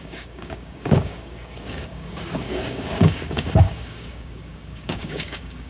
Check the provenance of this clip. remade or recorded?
remade